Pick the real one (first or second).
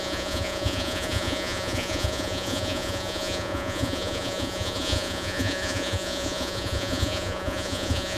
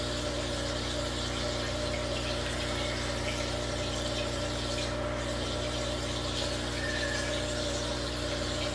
second